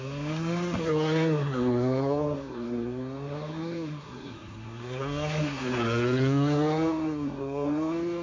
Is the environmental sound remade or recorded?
remade